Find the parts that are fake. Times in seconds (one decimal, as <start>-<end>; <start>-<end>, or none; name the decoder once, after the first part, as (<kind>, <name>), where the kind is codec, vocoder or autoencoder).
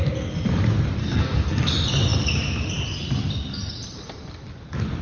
1.0-1.7 (codec, SNAC)